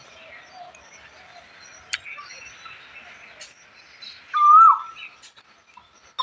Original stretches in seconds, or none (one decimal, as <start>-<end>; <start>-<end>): 0.0-6.2